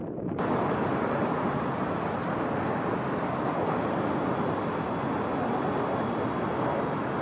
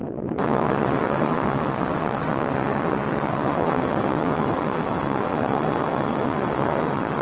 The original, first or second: first